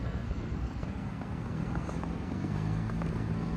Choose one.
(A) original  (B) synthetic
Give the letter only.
B